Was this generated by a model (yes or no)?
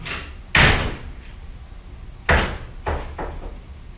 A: no